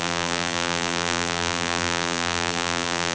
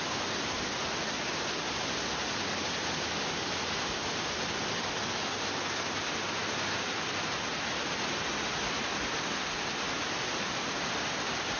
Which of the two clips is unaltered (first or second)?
second